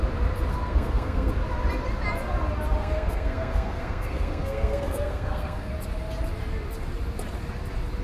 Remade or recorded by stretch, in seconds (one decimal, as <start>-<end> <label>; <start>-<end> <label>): 0.0-0.5 recorded; 0.5-1.3 remade; 1.3-2.8 recorded; 2.8-5.7 remade; 5.7-8.0 recorded